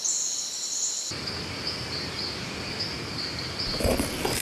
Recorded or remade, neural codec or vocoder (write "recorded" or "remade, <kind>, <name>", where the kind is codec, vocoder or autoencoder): recorded